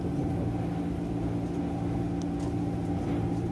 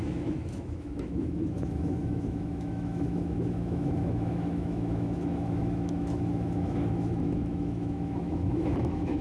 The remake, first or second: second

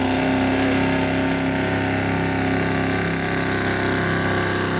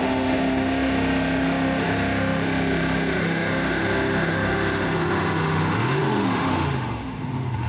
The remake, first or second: second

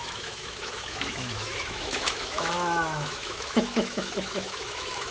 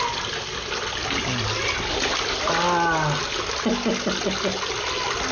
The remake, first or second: first